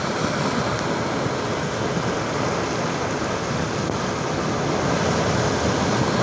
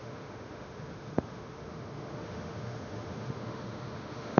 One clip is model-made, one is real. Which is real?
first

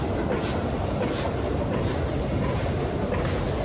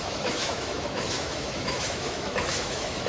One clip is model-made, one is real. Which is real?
first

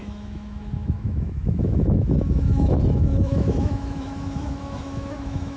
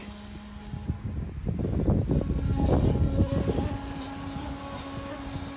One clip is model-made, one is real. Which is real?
second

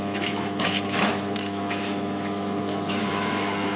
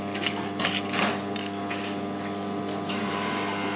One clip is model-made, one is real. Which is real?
second